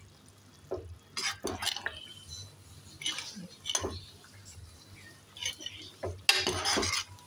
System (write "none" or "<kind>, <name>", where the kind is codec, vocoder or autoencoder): none